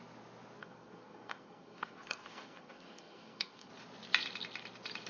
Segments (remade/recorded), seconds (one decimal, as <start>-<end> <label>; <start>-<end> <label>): 0.0-0.6 recorded; 0.6-3.7 remade; 3.7-5.1 recorded